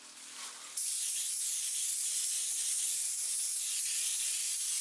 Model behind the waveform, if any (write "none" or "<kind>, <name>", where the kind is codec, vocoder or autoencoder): none